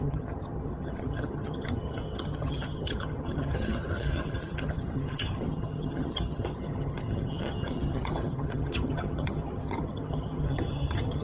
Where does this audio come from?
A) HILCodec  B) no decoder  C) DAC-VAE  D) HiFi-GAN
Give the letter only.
D